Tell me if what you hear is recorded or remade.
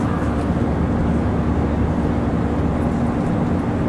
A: recorded